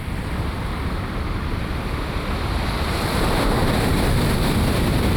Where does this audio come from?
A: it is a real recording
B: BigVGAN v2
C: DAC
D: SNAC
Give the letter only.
B